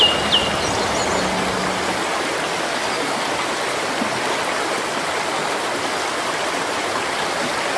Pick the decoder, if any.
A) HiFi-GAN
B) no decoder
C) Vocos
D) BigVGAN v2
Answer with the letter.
B